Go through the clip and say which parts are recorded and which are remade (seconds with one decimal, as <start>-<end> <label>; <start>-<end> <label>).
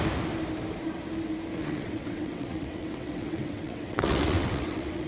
0.0-1.6 recorded; 1.6-5.1 remade